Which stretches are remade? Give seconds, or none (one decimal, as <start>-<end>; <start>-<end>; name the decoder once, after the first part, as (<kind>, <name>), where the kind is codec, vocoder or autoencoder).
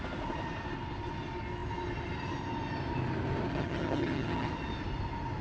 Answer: 3.5-4.5 (vocoder, HiFi-GAN)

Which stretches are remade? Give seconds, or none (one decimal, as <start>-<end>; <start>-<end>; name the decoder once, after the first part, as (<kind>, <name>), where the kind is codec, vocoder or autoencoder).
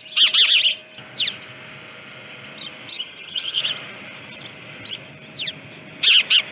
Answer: 2.9-3.6 (vocoder, HiFi-GAN)